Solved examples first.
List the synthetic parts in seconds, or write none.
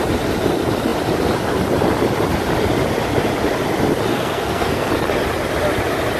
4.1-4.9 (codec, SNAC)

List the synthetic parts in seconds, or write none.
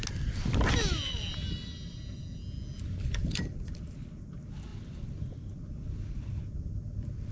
none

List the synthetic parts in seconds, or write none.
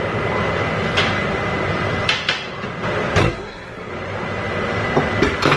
3.2-3.9 (codec, SNAC)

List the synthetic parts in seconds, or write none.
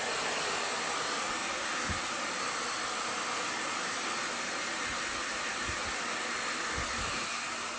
none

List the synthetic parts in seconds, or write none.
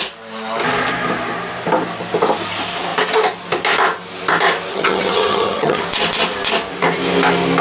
4.7-5.8 (vocoder, HiFi-GAN)